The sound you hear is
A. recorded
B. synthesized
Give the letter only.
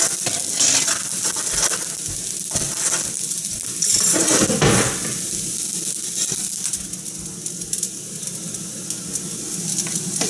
A